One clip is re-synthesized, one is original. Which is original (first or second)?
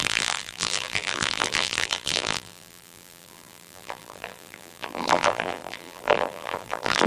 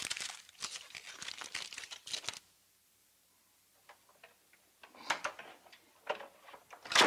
second